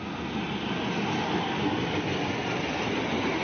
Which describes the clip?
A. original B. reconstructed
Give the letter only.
A